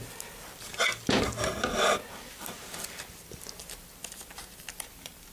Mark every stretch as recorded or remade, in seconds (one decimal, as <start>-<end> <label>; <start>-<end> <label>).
0.0-5.3 recorded